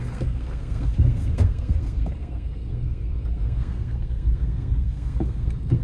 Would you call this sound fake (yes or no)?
yes